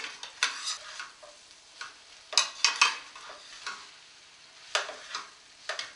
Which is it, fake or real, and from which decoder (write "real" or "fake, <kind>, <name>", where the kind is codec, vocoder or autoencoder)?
real